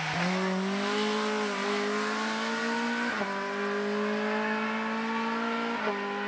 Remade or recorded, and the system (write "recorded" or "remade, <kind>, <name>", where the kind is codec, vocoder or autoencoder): recorded